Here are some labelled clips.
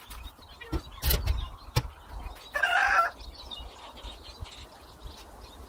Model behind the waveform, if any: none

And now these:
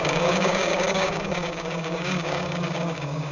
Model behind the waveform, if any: codec, DAC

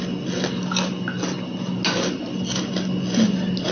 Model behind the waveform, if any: none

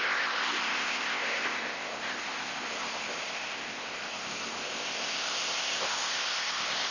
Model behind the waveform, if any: codec, ZipCodec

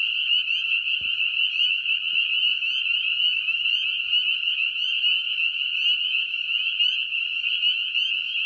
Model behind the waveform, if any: none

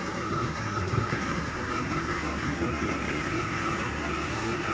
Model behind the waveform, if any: codec, SNAC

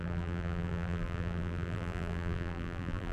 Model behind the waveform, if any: vocoder, BigVGAN v2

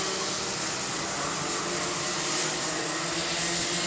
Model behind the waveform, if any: none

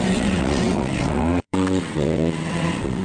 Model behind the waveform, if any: vocoder, WaveNeXt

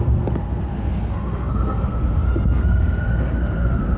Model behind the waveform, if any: codec, SNAC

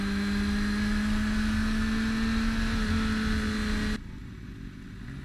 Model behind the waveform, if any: none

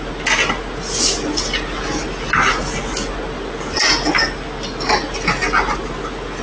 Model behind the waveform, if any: none